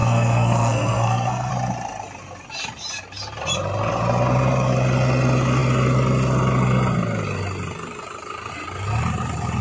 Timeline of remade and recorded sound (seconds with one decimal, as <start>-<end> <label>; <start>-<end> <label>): 0.0-1.5 remade; 1.5-9.6 recorded